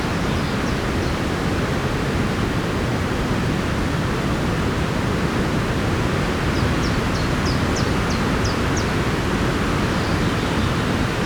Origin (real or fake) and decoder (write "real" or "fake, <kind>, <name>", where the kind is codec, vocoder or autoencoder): real